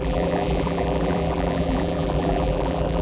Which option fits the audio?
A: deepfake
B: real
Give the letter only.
A